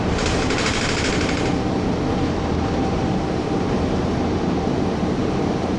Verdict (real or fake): fake